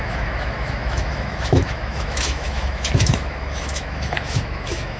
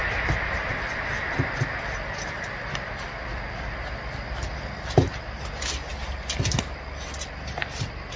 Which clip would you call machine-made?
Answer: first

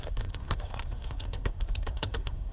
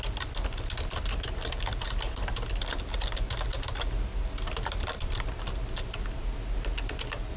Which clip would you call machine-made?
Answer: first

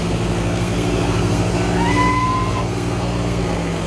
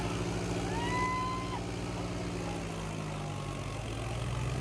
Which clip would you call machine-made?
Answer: first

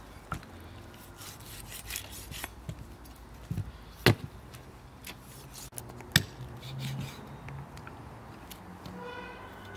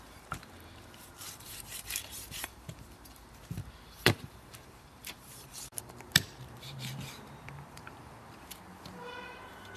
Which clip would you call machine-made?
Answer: second